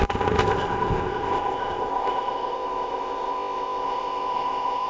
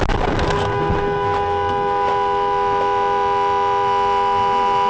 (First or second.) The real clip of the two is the second